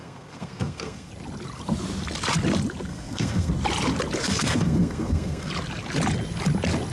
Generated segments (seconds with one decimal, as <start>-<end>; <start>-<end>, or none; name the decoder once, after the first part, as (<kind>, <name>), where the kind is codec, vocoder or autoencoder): 0.0-1.1 (codec, SNAC); 2.9-3.5; 4.2-5.5